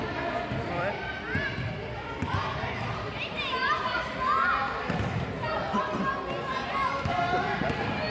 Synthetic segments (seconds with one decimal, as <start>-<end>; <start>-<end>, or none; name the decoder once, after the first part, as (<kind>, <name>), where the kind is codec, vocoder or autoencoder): 4.6-5.2 (vocoder, BigVGAN v2)